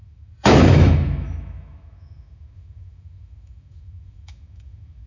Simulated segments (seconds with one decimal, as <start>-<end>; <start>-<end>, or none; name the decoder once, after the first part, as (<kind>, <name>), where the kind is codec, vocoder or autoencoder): 0.0-5.1 (autoencoder, DAC-VAE)